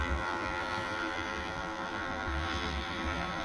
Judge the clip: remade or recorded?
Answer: remade